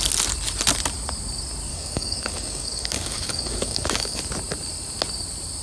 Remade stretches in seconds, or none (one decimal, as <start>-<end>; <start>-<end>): 1.7-4.2